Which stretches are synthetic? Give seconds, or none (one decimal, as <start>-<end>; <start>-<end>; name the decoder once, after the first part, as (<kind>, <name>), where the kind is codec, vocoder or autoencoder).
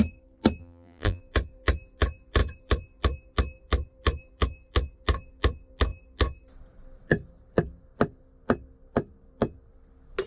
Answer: 0.6-1.2 (vocoder, BigVGAN v2)